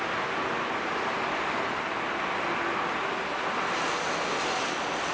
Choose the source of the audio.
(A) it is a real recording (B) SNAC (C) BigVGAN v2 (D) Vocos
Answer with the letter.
A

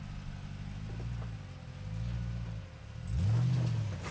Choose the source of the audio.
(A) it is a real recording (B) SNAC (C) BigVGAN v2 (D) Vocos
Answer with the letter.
A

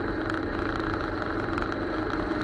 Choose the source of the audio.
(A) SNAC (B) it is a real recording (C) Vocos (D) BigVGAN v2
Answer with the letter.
B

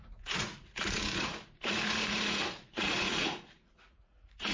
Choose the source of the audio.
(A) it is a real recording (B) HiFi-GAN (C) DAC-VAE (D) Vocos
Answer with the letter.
D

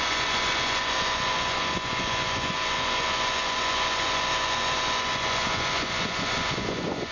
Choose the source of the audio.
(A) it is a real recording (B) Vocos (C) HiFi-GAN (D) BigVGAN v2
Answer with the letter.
B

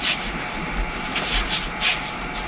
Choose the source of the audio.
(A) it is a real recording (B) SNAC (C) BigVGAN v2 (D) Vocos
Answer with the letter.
A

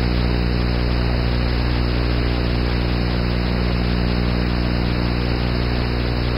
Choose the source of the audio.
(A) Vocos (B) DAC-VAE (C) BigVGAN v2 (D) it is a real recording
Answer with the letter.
D